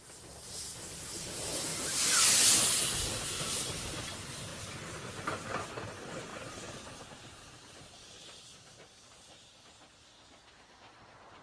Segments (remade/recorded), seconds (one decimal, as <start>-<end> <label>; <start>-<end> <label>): 0.0-11.4 recorded